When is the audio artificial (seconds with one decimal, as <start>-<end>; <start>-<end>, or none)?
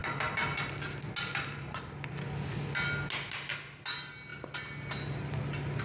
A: none